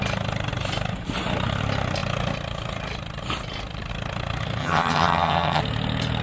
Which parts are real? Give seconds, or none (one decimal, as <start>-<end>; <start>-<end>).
0.0-4.6; 5.6-6.2